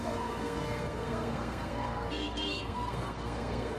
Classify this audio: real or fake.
fake